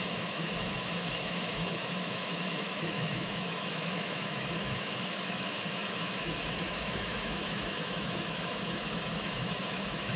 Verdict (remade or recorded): remade